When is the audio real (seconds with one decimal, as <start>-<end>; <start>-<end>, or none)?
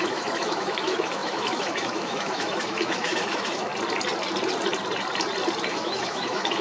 3.7-5.7